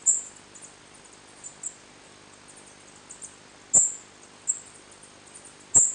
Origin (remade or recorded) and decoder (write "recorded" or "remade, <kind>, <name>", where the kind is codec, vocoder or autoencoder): recorded